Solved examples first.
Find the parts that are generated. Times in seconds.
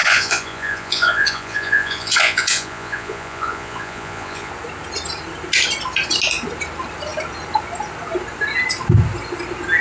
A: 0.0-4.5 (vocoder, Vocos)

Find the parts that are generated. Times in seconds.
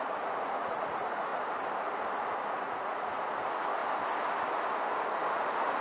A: 0.0-1.3 (vocoder, Vocos); 2.5-3.8; 5.3-5.8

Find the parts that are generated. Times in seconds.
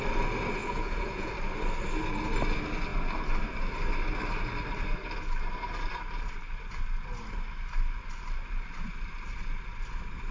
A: 0.6-1.3 (vocoder, Vocos)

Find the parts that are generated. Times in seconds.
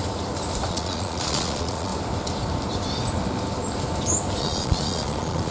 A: 0.7-1.9 (vocoder, Vocos); 4.4-5.5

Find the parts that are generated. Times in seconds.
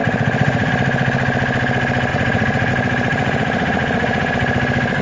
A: 0.0-0.7 (vocoder, Vocos); 2.1-2.7; 3.1-4.3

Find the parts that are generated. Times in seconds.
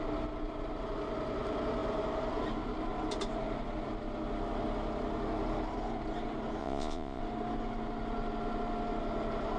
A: 6.6-7.2 (vocoder, Vocos)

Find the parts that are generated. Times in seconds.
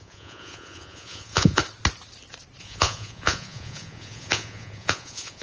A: 0.0-1.6 (vocoder, Vocos); 2.6-5.4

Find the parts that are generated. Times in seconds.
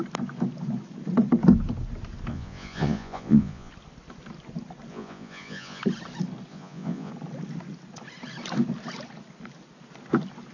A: 2.3-3.7 (vocoder, Vocos); 4.9-5.8; 6.5-7.1